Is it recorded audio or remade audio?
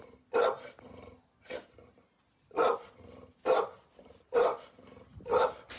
recorded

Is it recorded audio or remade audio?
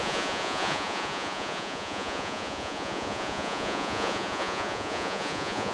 remade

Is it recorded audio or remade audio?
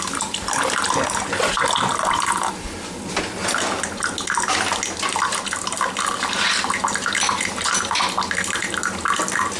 recorded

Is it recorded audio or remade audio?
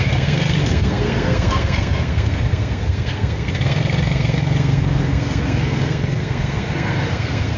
remade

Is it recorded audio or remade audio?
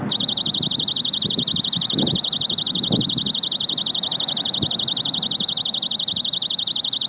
recorded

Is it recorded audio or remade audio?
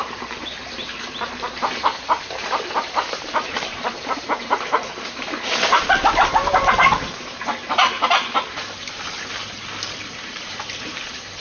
remade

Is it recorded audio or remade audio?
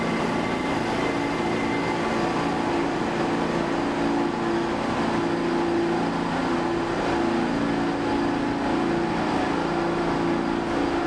recorded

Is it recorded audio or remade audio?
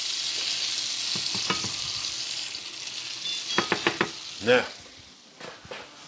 recorded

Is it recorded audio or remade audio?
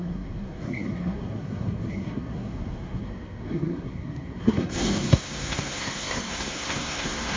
remade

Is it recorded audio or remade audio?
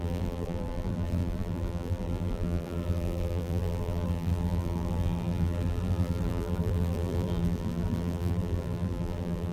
remade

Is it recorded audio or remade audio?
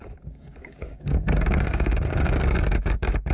remade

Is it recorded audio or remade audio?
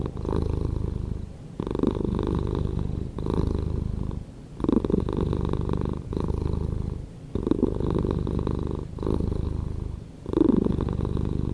recorded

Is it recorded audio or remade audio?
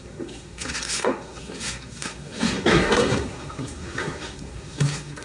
remade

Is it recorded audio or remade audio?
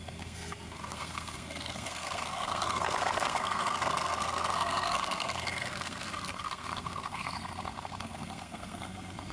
remade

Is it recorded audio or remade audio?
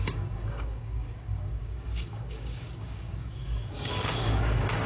remade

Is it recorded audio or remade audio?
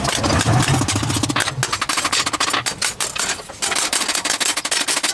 recorded